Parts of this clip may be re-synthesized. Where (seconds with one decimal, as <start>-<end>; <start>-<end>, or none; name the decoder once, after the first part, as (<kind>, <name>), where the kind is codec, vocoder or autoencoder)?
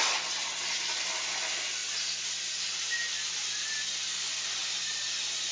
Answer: none